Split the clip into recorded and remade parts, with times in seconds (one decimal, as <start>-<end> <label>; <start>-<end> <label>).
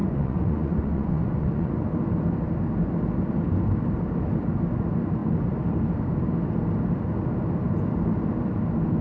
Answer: 0.0-1.7 remade; 1.7-9.0 recorded